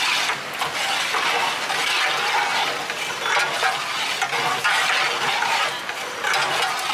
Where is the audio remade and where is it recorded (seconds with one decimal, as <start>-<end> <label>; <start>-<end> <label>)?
0.0-6.9 recorded